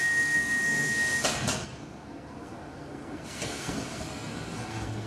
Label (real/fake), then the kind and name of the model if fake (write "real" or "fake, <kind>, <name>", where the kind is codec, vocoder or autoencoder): fake, codec, SNAC